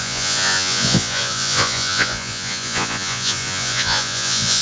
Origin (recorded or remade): remade